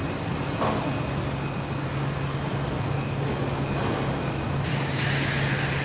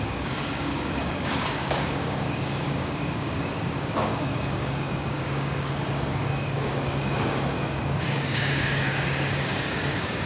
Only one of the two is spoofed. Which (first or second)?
second